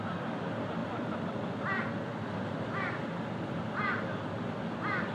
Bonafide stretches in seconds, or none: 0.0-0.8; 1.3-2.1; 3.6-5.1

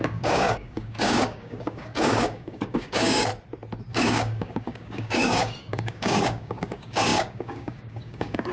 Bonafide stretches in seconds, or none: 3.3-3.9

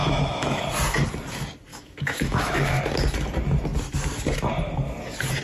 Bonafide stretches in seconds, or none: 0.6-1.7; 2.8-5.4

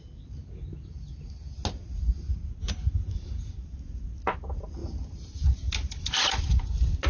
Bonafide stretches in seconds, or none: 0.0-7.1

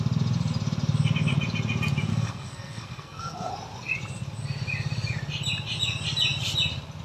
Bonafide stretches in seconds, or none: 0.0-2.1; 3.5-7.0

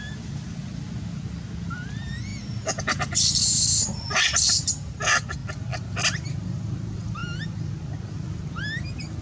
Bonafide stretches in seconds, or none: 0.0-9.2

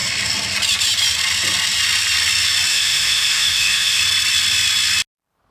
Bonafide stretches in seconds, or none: 0.0-2.7; 4.0-5.5